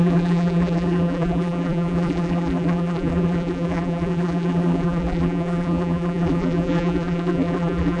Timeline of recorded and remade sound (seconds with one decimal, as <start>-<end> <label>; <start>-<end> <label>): 0.0-8.0 remade